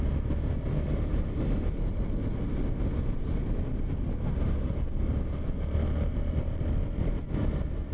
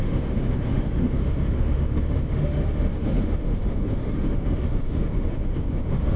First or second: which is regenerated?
second